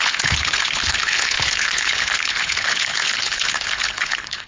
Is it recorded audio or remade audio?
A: remade